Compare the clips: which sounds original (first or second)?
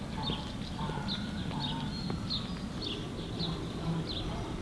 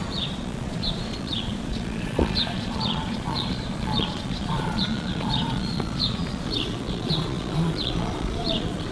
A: first